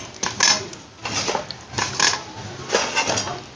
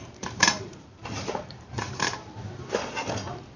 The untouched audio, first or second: first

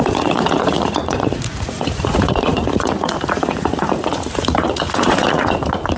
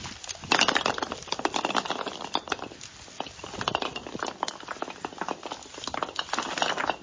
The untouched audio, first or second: second